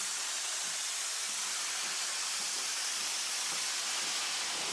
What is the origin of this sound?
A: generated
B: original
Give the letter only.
B